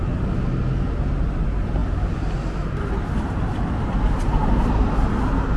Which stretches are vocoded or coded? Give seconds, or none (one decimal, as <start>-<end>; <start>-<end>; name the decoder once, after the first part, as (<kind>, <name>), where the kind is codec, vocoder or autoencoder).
none